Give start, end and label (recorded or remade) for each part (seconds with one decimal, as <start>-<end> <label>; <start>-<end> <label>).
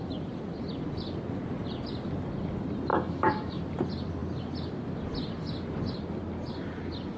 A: 0.0-2.9 recorded; 2.9-3.6 remade; 3.6-7.2 recorded